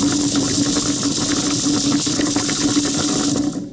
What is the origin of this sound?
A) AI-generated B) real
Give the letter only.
B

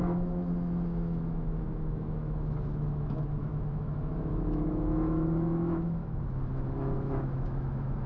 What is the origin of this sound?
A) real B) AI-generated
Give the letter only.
B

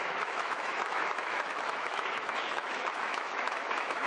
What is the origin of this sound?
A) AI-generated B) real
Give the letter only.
A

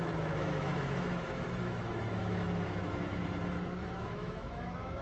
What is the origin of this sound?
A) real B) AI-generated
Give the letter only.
B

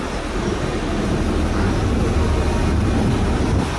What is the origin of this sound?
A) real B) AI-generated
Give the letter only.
A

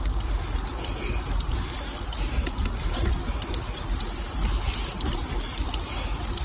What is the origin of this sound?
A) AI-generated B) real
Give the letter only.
B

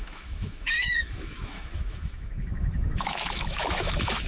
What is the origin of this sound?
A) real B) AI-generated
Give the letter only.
B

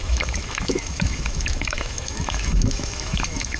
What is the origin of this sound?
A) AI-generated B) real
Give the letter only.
A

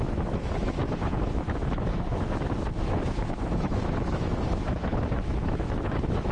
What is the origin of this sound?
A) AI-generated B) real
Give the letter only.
A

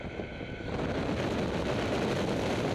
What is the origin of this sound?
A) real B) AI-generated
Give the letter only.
A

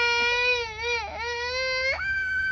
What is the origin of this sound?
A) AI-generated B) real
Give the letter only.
A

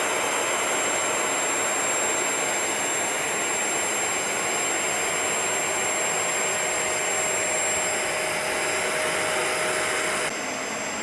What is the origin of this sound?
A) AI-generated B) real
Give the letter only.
B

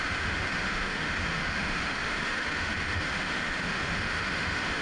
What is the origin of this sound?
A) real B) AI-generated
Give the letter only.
B